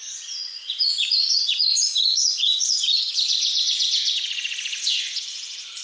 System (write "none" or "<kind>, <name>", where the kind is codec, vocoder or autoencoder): vocoder, Vocos